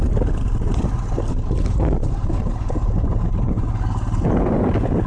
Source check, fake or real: real